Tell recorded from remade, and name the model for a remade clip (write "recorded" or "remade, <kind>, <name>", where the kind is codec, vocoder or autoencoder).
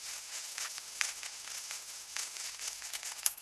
remade, autoencoder, DAC-VAE